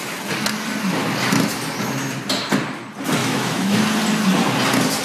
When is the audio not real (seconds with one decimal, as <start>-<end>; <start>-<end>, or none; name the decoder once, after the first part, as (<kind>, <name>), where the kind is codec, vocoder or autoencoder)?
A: 3.2-3.8 (autoencoder, DAC-VAE)